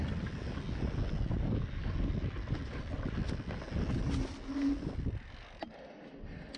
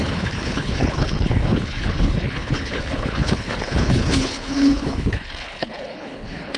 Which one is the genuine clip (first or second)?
first